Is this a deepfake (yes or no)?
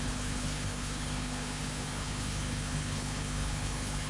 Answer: yes